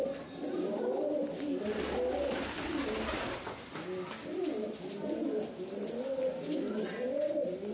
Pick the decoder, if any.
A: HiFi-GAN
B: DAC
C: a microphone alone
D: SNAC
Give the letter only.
C